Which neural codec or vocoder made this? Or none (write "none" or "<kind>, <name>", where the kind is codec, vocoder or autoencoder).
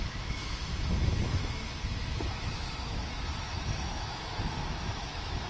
autoencoder, DAC-VAE